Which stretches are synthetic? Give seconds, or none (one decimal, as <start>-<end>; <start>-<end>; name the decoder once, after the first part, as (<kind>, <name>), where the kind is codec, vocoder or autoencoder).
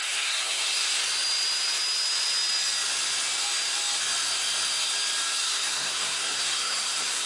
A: 0.0-1.0 (codec, SNAC); 5.4-7.3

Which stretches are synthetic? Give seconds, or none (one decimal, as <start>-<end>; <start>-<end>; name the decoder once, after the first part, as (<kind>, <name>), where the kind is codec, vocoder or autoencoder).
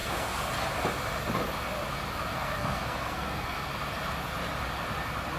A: 0.0-0.5 (codec, SNAC); 2.3-3.7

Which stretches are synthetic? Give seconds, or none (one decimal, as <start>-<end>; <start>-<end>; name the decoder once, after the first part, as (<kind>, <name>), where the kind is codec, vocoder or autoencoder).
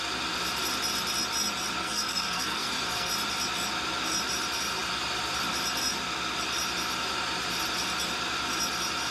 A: 1.8-3.1 (codec, SNAC)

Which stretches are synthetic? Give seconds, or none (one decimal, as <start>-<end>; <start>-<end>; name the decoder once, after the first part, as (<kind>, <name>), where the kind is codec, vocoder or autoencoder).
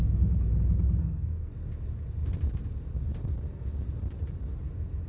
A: 0.0-0.5 (codec, SNAC); 1.0-1.5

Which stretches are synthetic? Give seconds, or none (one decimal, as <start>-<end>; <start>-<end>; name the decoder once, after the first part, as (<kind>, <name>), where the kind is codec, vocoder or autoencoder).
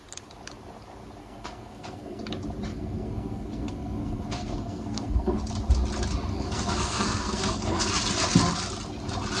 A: 1.2-2.2 (codec, SNAC); 2.7-5.4; 6.3-7.9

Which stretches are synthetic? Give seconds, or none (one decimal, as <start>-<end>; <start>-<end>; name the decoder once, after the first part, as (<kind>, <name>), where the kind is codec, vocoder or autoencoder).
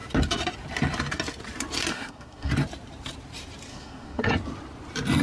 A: 1.9-2.5 (codec, SNAC); 3.7-4.3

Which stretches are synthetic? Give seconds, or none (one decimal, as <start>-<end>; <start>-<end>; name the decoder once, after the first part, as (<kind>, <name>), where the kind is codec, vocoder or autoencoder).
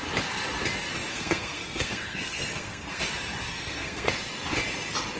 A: 1.1-3.0 (codec, SNAC); 3.5-4.1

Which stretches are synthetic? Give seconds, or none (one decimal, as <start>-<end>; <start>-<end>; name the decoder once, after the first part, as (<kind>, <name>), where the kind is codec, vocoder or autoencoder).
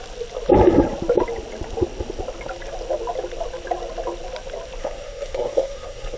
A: 4.8-6.2 (codec, SNAC)